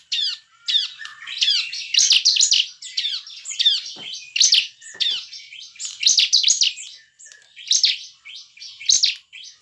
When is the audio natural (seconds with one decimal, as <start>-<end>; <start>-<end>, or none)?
0.0-9.6